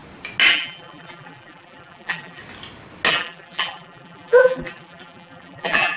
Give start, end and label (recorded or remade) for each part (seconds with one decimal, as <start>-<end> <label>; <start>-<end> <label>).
0.0-0.5 recorded; 0.5-2.4 remade; 2.4-3.1 recorded; 3.1-6.0 remade

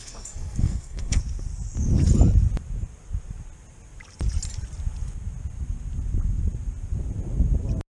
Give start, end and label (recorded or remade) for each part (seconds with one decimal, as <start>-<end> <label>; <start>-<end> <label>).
0.0-1.2 remade; 1.2-7.9 recorded